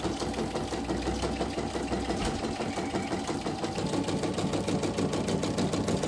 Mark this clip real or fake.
real